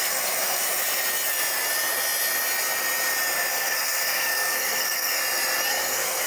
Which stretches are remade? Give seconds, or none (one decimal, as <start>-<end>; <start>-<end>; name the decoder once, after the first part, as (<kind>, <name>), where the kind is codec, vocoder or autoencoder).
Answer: 0.0-0.6 (codec, SNAC); 3.5-5.2; 5.7-6.3